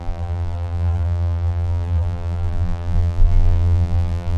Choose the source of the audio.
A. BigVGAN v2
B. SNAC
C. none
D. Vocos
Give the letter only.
A